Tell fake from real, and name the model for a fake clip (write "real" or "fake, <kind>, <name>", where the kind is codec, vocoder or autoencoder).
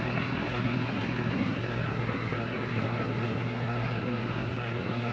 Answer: fake, codec, SNAC